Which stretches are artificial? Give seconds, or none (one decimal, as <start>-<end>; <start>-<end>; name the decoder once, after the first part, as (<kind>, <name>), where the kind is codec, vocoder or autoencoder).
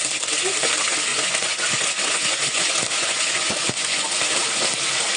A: 1.1-4.2 (vocoder, Vocos)